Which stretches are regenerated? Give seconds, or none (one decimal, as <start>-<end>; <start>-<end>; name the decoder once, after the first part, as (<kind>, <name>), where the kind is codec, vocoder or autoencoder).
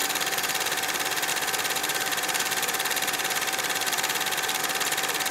0.0-1.3 (vocoder, BigVGAN v2); 1.8-4.6